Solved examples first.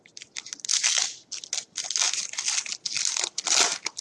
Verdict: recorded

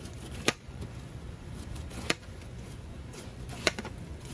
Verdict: remade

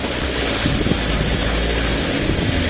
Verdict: recorded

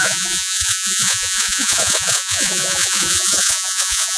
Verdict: remade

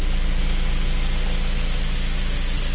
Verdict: recorded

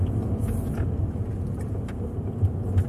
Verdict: recorded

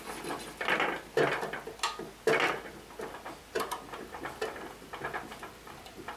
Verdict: recorded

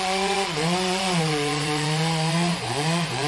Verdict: remade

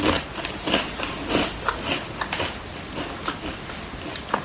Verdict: recorded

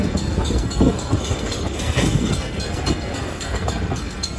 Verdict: remade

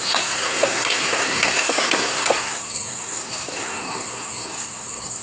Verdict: remade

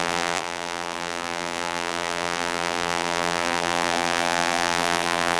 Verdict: remade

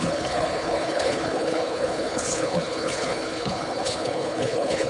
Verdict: remade